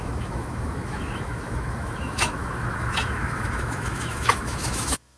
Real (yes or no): no